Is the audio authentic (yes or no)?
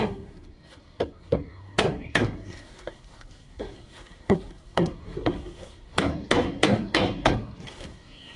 no